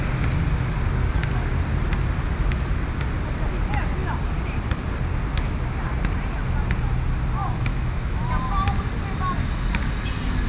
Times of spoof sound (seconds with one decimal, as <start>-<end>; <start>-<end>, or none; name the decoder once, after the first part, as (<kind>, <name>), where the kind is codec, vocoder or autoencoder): 7.7-8.3 (autoencoder, DAC-VAE)